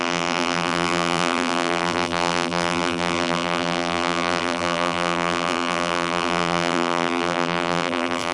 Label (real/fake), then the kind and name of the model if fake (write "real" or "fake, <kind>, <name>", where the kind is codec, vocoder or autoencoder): fake, vocoder, BigVGAN v2